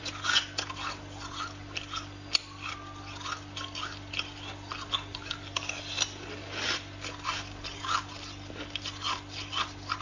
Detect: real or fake real